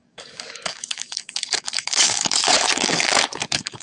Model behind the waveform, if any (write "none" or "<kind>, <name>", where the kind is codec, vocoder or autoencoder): codec, DAC